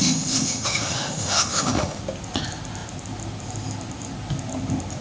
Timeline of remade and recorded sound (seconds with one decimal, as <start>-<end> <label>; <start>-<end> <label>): 0.0-2.0 remade; 2.0-5.0 recorded

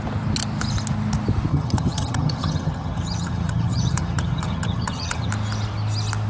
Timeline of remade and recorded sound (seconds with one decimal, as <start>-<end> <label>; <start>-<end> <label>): 0.0-1.5 recorded; 1.5-5.3 remade; 5.3-6.3 recorded

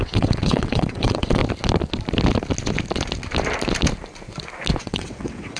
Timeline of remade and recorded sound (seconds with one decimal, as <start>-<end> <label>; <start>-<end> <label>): 0.0-1.4 remade; 1.4-4.8 recorded; 4.8-5.6 remade

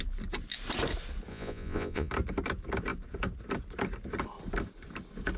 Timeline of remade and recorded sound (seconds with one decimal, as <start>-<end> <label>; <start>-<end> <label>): 0.0-1.3 recorded; 1.3-2.1 remade; 2.1-5.4 recorded

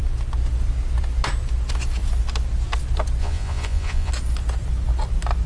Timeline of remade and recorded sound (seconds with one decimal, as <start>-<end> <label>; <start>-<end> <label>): 0.0-3.2 recorded; 3.2-4.1 remade; 4.1-5.5 recorded

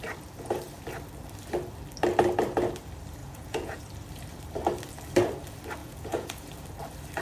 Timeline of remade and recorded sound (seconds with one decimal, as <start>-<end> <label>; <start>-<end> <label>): 0.0-3.2 recorded; 3.2-3.8 remade; 3.8-5.8 recorded; 5.8-6.5 remade; 6.5-7.2 recorded

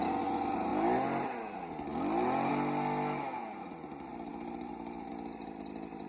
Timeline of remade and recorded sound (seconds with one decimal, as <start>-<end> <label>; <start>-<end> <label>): 0.0-6.1 recorded

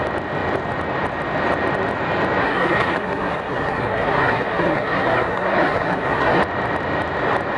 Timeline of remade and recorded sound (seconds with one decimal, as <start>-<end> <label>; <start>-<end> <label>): 0.0-2.4 recorded; 2.4-6.4 remade; 6.4-7.6 recorded